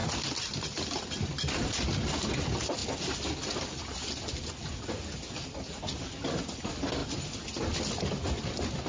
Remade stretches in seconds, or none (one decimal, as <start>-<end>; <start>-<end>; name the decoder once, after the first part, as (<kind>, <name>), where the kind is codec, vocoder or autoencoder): none